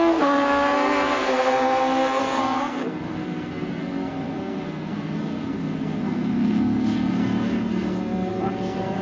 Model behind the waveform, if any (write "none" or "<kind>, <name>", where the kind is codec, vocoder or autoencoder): codec, SNAC